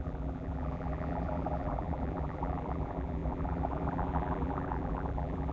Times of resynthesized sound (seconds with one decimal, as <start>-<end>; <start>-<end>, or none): 0.0-5.5